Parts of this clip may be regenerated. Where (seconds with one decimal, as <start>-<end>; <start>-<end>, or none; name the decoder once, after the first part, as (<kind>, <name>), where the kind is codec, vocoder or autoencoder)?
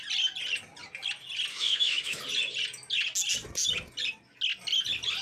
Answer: 1.5-2.2 (autoencoder, DAC-VAE)